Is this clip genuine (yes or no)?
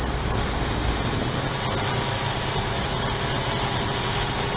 yes